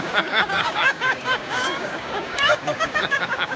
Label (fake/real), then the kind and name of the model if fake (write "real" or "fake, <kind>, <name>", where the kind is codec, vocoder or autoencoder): fake, codec, DAC